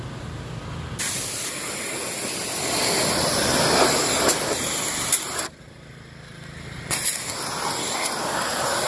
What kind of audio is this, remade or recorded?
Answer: recorded